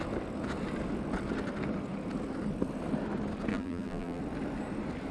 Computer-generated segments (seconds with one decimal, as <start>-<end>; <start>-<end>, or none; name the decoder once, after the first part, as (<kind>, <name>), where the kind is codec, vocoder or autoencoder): 3.5-4.2 (vocoder, BigVGAN v2)